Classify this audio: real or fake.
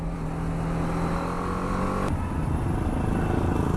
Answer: real